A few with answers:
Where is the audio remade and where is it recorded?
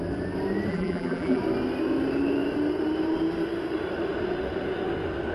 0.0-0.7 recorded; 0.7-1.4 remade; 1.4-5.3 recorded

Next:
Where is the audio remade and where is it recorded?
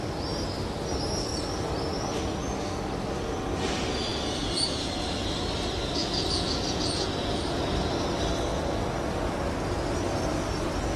0.0-4.1 recorded; 4.1-4.9 remade; 4.9-6.0 recorded; 6.0-7.7 remade; 7.7-11.0 recorded